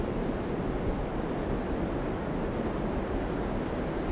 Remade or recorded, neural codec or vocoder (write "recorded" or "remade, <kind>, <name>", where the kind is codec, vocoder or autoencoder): recorded